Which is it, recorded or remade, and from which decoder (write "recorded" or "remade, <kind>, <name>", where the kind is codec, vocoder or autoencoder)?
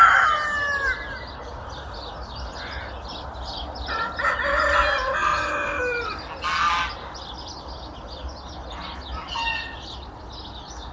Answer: recorded